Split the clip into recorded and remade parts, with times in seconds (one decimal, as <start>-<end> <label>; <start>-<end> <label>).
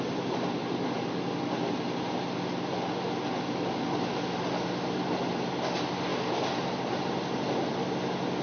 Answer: 0.0-8.4 recorded